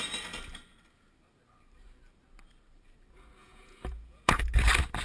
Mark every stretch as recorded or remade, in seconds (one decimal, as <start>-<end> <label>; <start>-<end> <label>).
0.0-3.4 recorded; 3.4-4.4 remade; 4.4-5.0 recorded